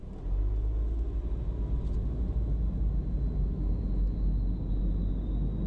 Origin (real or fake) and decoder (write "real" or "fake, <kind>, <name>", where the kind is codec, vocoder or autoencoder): real